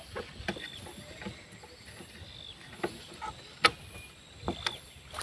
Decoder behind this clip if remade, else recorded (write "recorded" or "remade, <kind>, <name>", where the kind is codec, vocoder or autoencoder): recorded